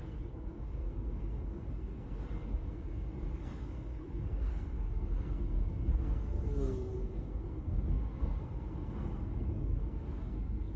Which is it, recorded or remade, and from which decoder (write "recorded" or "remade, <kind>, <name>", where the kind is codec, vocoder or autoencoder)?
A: remade, codec, SNAC